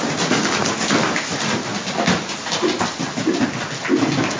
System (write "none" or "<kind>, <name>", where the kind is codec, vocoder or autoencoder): none